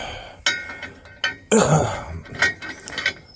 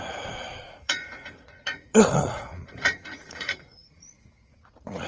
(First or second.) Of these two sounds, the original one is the first